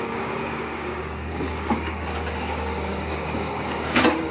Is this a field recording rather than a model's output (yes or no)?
no